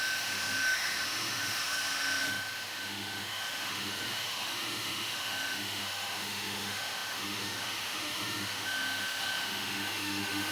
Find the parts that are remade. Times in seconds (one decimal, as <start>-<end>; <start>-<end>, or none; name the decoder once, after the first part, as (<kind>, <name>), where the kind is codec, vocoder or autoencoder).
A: 0.0-10.5 (autoencoder, DAC-VAE)